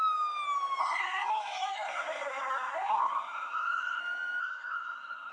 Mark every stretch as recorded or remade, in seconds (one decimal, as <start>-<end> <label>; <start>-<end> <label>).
0.0-0.8 recorded; 0.8-4.0 remade; 4.0-4.4 recorded; 4.4-5.3 remade